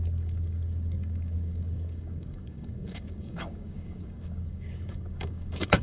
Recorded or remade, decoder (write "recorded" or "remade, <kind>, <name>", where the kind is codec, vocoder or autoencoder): remade, codec, DAC